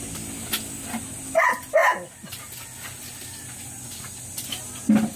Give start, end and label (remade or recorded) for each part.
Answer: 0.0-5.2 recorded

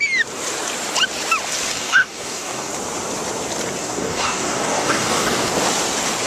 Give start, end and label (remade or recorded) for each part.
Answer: 0.0-1.7 recorded; 1.7-2.7 remade; 2.7-3.8 recorded; 3.8-5.5 remade; 5.5-6.3 recorded

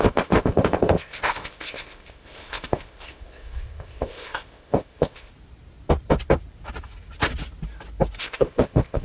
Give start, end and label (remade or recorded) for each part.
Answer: 0.0-5.3 remade; 5.3-8.2 recorded; 8.2-9.0 remade

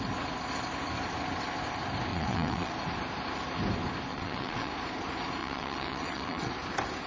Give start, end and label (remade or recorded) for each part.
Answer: 0.0-2.1 recorded; 2.1-2.7 remade; 2.7-4.1 recorded; 4.1-4.7 remade; 4.7-5.4 recorded; 5.4-6.5 remade; 6.5-7.1 recorded

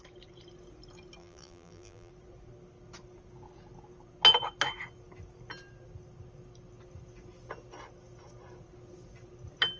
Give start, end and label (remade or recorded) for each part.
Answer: 0.0-1.2 recorded; 1.2-2.1 remade; 2.1-9.8 recorded

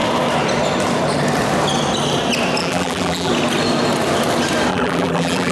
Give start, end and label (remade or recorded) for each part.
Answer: 0.0-2.6 recorded; 2.6-3.3 remade; 3.3-4.7 recorded; 4.7-5.5 remade

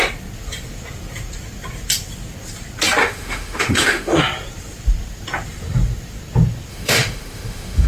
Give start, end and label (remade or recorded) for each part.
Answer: 0.0-3.0 recorded; 3.0-4.2 remade; 4.2-6.7 recorded; 6.7-7.9 remade